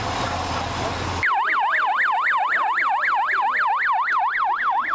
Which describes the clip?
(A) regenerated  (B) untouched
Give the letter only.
B